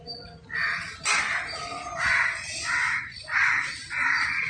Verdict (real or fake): real